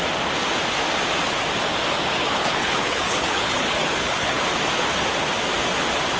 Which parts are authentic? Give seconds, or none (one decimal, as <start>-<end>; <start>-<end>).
0.0-2.2; 4.4-6.2